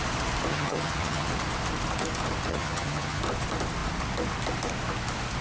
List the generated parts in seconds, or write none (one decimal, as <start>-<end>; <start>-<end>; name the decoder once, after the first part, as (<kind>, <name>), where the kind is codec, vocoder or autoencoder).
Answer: 0.5-1.3 (vocoder, HiFi-GAN); 2.5-3.2